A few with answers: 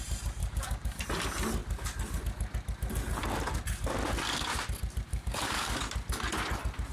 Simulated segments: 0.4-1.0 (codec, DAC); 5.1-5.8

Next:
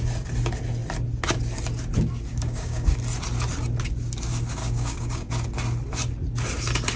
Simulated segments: 2.3-2.9 (codec, DAC); 4.6-5.3

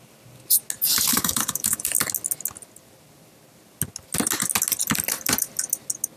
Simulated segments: 1.1-2.0 (codec, DAC)

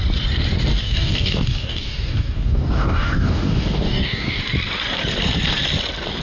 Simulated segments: 0.7-4.4 (codec, DAC)

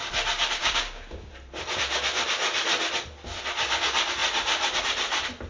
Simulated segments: 0.6-1.3 (codec, DAC)